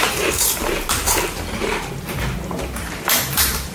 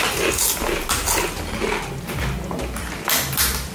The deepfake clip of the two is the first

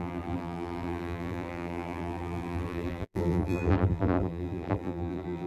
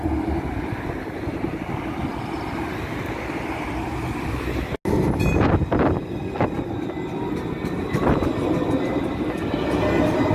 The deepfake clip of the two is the first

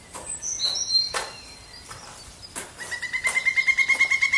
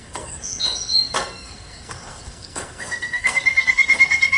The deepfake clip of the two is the second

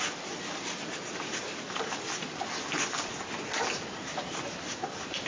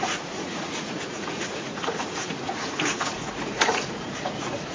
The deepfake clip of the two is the second